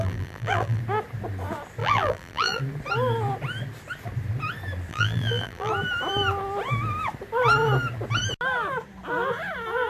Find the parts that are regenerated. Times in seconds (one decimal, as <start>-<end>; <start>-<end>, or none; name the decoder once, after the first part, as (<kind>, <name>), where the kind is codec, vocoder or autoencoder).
0.0-0.8 (vocoder, BigVGAN v2); 1.8-2.6; 4.9-5.7